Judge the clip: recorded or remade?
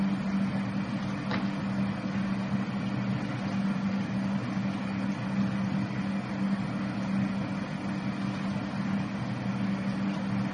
recorded